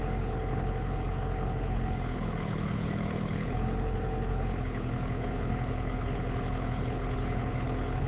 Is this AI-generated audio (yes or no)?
yes